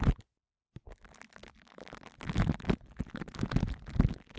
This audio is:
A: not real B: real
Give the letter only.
A